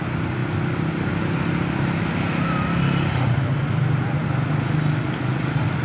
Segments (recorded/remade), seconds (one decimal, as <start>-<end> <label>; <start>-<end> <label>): 0.0-5.8 recorded